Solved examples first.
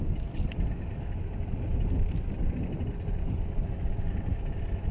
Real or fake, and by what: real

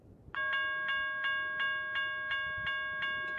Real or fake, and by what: real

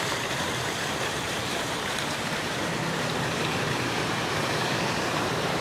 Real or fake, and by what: fake, vocoder, BigVGAN v2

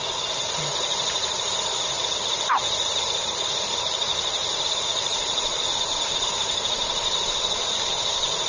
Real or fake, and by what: fake, vocoder, BigVGAN v2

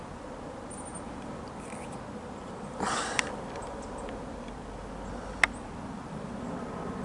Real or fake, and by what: real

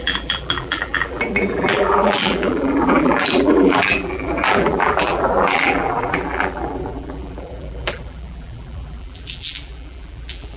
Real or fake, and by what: fake, vocoder, BigVGAN v2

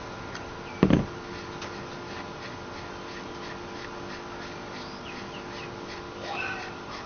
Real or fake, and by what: real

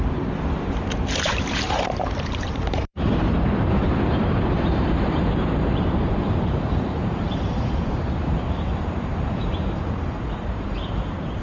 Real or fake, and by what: fake, vocoder, BigVGAN v2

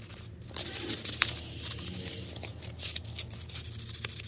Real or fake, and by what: real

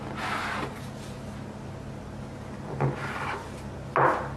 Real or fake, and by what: real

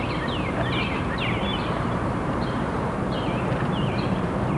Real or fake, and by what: fake, vocoder, BigVGAN v2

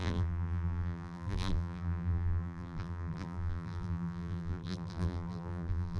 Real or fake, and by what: fake, vocoder, BigVGAN v2